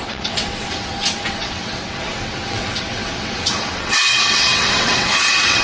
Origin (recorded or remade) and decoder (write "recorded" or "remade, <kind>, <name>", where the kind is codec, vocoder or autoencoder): remade, vocoder, WaveNeXt